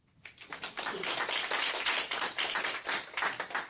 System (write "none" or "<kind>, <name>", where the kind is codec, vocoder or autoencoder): none